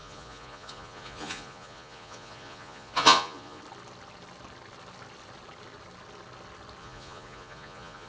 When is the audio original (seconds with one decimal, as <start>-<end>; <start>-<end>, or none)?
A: 3.6-6.8